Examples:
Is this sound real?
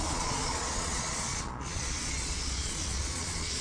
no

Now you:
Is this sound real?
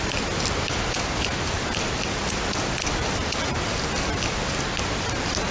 yes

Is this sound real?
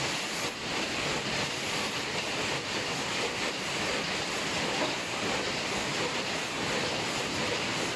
no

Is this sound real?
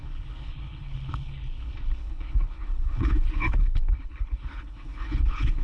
no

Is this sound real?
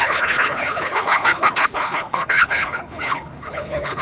no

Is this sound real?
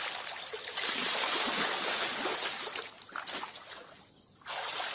yes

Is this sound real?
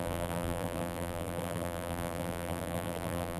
no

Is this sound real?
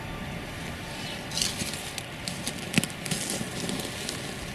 yes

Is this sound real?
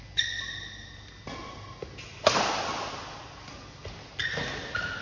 yes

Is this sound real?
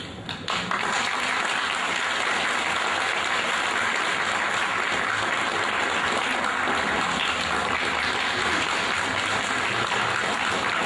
yes